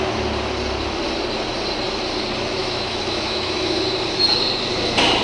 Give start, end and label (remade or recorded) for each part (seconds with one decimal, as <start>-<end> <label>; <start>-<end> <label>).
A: 0.0-2.6 recorded; 2.6-3.8 remade; 3.8-5.2 recorded

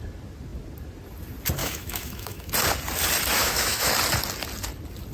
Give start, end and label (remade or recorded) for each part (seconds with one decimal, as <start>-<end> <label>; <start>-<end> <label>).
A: 0.0-1.6 recorded; 1.6-2.5 remade; 2.5-3.4 recorded; 3.4-3.9 remade; 3.9-5.1 recorded

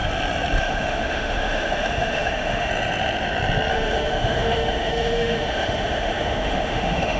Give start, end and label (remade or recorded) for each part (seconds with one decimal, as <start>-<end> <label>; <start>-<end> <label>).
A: 0.0-0.6 recorded; 0.6-2.7 remade; 2.7-3.7 recorded; 3.7-7.2 remade